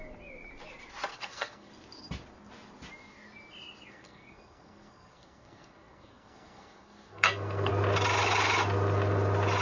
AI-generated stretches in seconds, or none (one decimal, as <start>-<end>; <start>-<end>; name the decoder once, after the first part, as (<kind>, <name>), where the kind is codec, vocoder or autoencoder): 1.1-1.7 (codec, SNAC); 3.9-7.7